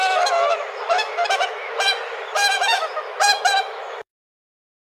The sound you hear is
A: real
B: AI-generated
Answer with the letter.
B